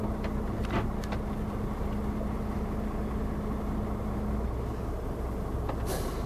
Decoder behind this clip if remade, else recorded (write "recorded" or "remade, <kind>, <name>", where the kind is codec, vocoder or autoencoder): recorded